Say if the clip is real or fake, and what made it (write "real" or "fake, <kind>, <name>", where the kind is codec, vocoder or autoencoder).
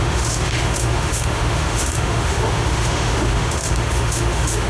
fake, autoencoder, DAC-VAE